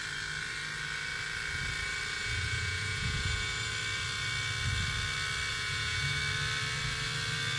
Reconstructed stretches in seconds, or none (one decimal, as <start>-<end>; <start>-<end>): 2.2-3.7; 5.5-6.2